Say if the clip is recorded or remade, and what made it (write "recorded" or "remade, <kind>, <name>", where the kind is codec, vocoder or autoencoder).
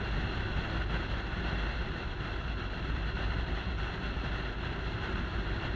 recorded